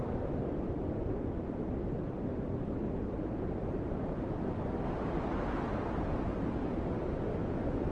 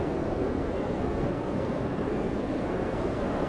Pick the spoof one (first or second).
second